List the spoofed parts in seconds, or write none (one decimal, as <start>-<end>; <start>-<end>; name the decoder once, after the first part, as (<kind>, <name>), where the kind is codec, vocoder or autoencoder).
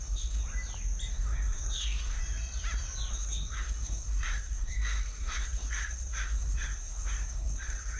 0.0-0.4 (codec, SNAC); 1.1-2.2; 3.1-8.0